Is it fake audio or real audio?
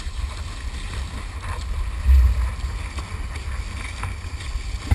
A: real